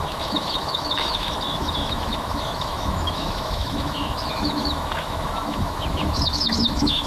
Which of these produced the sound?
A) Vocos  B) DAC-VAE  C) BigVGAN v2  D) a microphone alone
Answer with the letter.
B